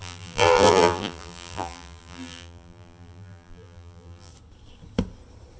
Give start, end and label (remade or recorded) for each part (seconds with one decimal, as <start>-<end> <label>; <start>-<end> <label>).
0.0-4.3 remade; 4.3-5.6 recorded